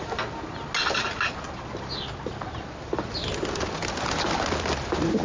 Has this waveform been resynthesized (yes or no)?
no